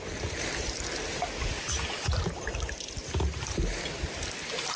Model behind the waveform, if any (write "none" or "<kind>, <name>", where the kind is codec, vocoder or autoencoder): none